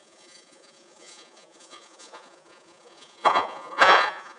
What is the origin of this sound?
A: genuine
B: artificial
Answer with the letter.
B